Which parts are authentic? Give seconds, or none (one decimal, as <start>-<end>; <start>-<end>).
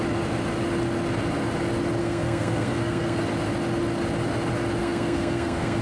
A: 0.0-2.0; 3.2-4.8